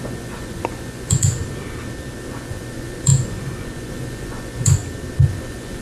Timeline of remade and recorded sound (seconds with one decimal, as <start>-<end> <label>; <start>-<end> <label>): 0.0-1.4 remade; 1.4-2.3 recorded; 2.3-4.8 remade; 4.8-5.3 recorded; 5.3-5.8 remade